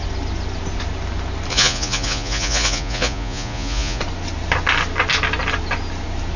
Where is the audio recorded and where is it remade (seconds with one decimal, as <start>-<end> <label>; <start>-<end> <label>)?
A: 0.0-1.5 recorded; 1.5-4.0 remade; 4.0-6.4 recorded